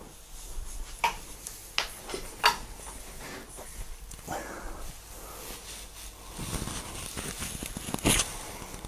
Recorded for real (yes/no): yes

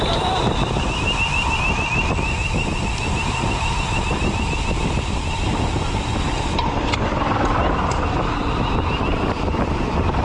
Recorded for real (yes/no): no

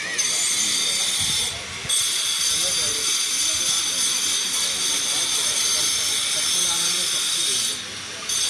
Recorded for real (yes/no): yes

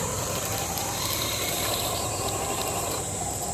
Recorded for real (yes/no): no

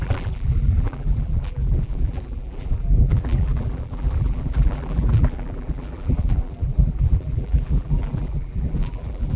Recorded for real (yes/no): no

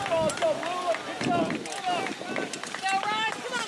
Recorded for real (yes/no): yes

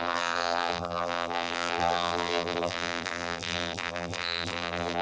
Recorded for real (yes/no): no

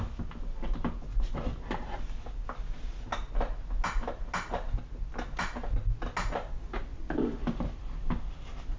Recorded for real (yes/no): yes